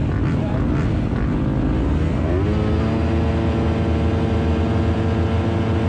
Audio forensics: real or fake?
real